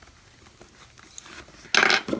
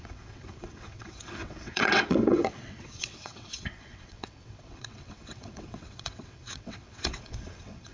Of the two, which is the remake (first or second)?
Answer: second